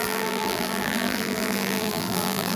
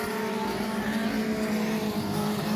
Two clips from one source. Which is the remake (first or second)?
first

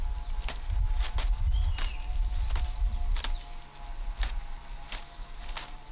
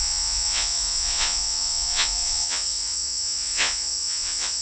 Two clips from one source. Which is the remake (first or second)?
second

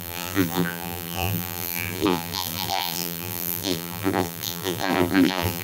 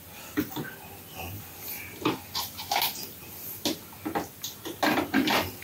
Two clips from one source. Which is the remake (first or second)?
first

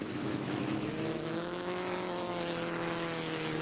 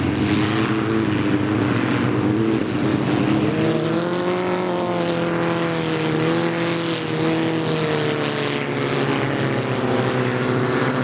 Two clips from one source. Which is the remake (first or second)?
first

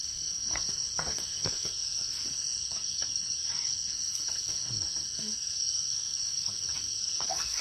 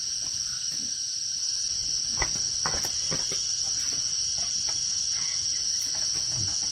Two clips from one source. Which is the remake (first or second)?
first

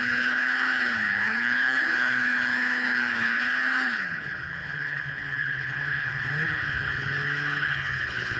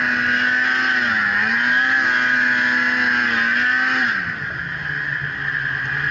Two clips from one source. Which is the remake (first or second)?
first